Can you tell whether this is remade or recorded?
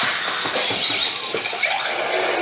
recorded